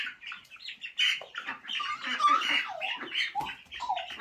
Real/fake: real